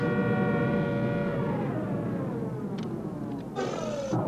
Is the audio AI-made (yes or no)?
no